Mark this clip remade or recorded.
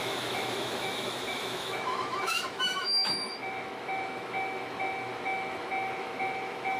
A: remade